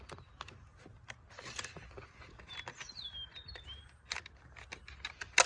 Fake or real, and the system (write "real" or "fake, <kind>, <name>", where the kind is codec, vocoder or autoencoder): real